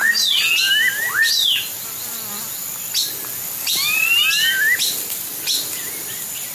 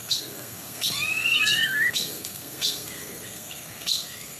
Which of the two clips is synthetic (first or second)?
second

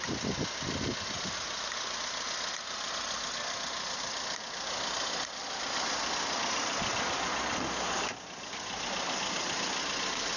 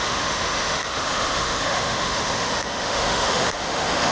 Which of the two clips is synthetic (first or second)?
second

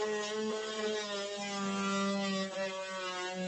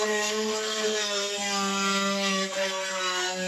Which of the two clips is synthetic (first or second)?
second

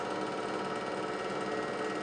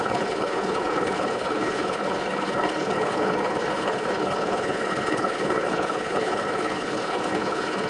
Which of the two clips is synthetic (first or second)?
second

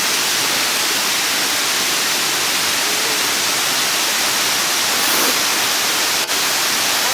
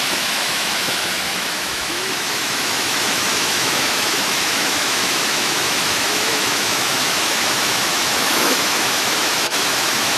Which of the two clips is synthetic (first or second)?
second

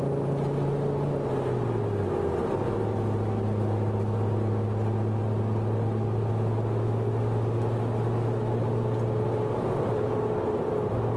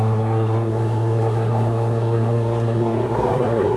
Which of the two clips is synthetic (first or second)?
second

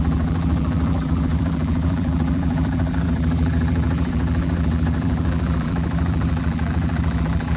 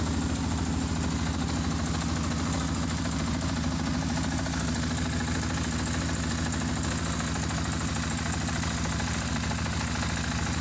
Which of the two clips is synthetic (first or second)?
first